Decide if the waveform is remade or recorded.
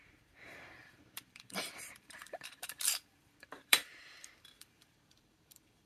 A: remade